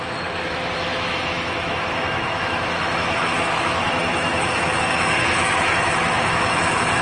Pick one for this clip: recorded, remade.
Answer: remade